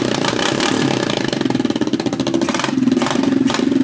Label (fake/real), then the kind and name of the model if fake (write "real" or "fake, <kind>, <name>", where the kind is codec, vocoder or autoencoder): real